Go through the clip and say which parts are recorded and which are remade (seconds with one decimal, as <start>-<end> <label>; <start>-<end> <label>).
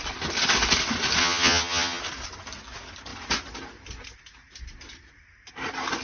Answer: 0.0-1.2 recorded; 1.2-2.0 remade; 2.0-6.0 recorded